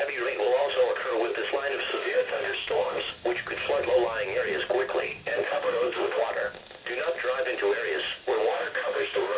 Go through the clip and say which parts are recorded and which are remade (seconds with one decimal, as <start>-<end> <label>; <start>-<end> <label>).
0.0-1.9 recorded; 1.9-3.1 remade; 3.1-5.1 recorded; 5.1-6.2 remade; 6.2-8.5 recorded; 8.5-9.4 remade